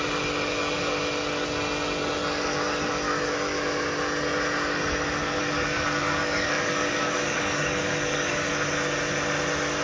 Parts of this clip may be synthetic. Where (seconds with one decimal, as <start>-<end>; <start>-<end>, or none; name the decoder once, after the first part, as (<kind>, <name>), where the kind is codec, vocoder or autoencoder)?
5.4-8.5 (codec, DAC)